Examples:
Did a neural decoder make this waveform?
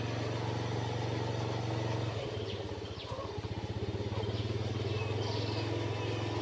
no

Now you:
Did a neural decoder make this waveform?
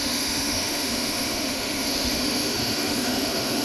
yes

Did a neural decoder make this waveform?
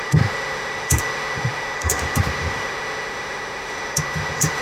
yes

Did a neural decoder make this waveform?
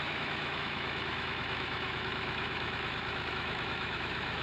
yes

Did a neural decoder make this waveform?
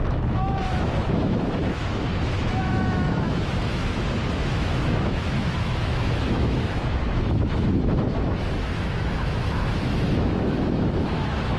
yes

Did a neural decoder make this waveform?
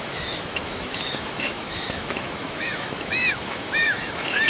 yes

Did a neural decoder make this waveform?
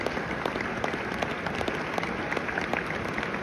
no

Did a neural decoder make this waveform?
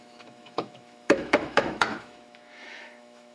yes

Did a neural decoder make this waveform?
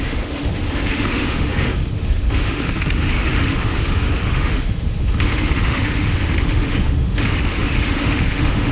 yes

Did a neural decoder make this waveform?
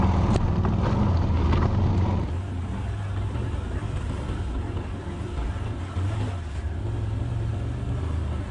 no